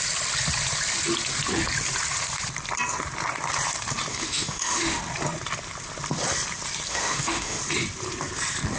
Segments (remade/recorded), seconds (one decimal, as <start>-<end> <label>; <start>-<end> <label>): 0.0-4.1 recorded; 4.1-5.0 remade; 5.0-6.9 recorded; 6.9-7.6 remade; 7.6-8.8 recorded